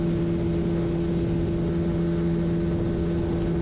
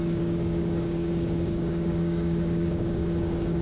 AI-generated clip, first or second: second